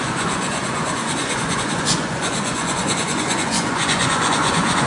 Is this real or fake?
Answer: fake